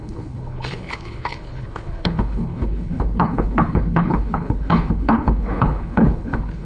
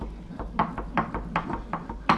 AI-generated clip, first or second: first